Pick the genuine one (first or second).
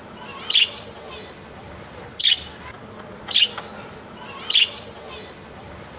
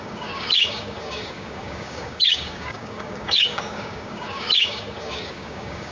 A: first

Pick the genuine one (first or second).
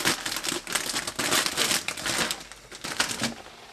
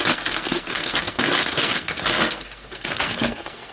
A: first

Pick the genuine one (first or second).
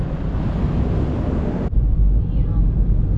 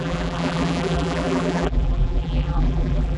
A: first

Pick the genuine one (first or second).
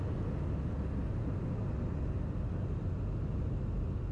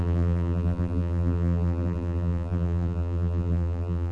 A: first